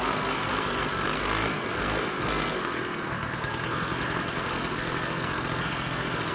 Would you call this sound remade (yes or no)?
yes